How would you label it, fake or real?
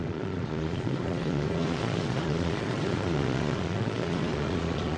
fake